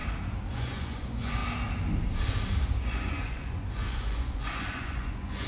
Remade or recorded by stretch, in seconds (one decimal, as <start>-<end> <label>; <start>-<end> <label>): 0.0-0.5 recorded; 0.5-1.4 remade; 1.4-2.8 recorded; 2.8-5.5 remade